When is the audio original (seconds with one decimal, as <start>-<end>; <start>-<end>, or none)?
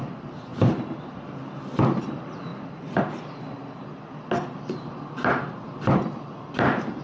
0.0-7.0